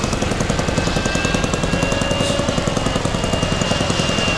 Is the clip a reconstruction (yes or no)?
no